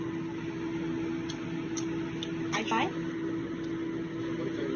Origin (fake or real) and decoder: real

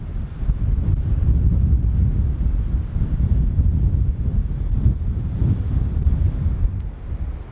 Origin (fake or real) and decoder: real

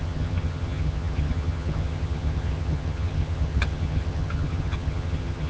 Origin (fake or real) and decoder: fake, vocoder, HiFi-GAN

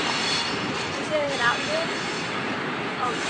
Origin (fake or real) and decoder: fake, vocoder, BigVGAN v2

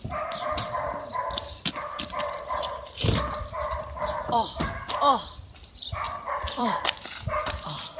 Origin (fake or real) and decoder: fake, vocoder, BigVGAN v2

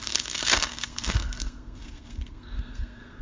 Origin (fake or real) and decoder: fake, codec, SNAC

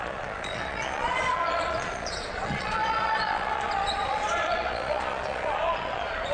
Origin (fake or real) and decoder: fake, vocoder, Vocos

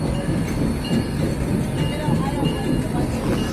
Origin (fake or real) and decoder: real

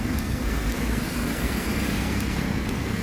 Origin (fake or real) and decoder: fake, codec, SNAC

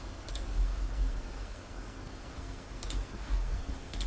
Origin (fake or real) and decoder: fake, codec, SNAC